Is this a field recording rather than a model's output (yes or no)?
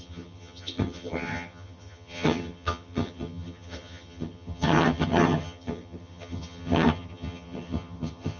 no